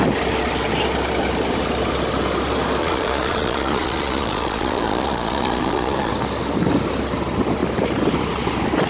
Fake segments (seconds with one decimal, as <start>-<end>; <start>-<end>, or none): 2.8-6.1